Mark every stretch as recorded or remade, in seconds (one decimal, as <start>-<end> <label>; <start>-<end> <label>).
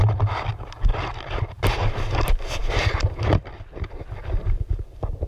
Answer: 0.0-5.3 recorded